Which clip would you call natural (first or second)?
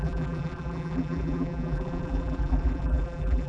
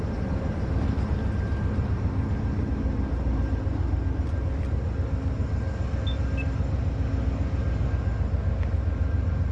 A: second